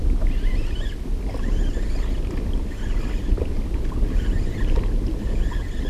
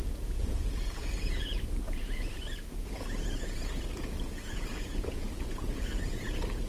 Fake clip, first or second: second